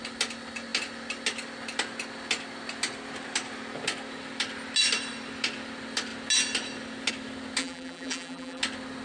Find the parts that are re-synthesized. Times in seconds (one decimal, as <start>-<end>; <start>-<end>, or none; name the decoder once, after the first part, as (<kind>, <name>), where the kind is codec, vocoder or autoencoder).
7.6-8.6 (vocoder, BigVGAN v2)